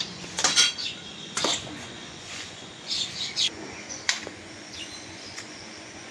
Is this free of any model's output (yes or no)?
no